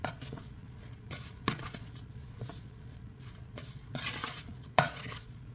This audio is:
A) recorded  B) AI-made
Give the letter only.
B